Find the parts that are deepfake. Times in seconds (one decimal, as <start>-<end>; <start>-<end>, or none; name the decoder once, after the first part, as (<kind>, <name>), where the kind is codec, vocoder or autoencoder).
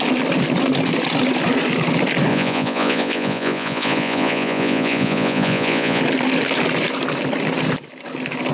2.3-6.0 (vocoder, Vocos)